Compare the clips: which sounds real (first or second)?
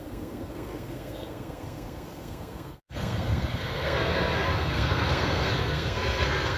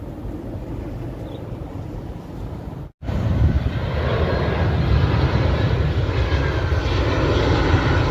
second